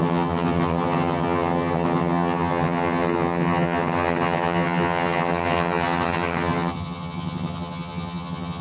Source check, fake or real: fake